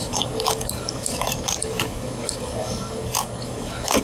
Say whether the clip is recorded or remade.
remade